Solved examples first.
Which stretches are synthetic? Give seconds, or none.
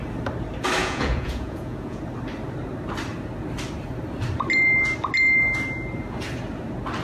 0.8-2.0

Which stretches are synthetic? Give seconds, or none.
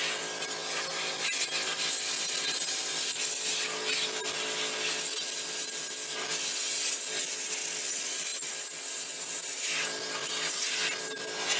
none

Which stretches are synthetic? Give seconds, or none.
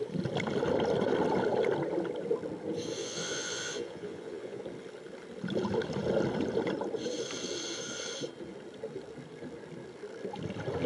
3.0-4.6